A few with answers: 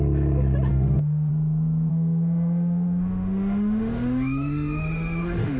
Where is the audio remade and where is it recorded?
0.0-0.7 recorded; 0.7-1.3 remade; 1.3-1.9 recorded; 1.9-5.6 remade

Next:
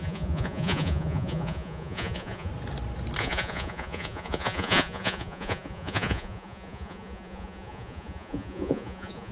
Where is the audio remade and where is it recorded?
0.0-2.5 remade; 2.5-3.2 recorded; 3.2-9.3 remade

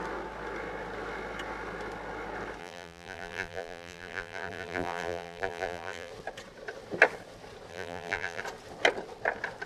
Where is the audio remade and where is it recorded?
0.0-2.6 recorded; 2.6-6.1 remade; 6.1-7.7 recorded; 7.7-8.4 remade; 8.4-9.7 recorded

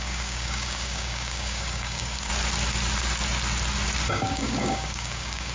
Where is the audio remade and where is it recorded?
0.0-2.3 remade; 2.3-4.1 recorded; 4.1-5.5 remade

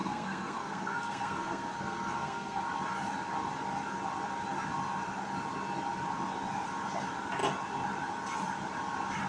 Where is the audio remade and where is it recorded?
0.0-2.6 remade; 2.6-9.3 recorded

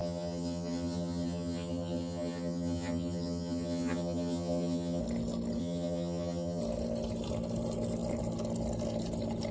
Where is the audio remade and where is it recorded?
0.0-5.0 remade; 5.0-5.6 recorded; 5.6-6.6 remade; 6.6-9.5 recorded

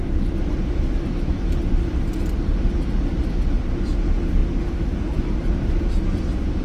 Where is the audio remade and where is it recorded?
0.0-6.6 recorded

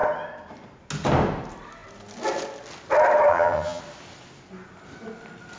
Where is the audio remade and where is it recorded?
0.0-3.3 recorded; 3.3-3.8 remade; 3.8-5.6 recorded